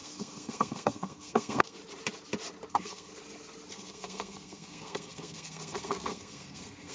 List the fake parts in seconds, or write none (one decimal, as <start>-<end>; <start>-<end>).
0.0-1.8; 2.7-3.1; 3.7-6.9